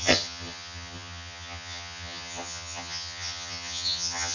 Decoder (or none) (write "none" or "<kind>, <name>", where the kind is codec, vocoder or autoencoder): vocoder, HiFi-GAN